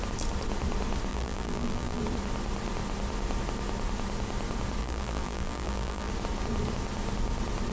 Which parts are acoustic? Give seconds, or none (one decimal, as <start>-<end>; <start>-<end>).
0.0-1.1; 2.0-4.8; 6.1-7.7